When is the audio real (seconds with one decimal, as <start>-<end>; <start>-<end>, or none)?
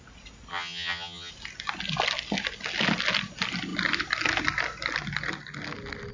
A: 0.0-0.5; 1.3-6.1